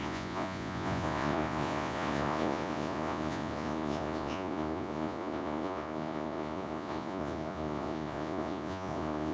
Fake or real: fake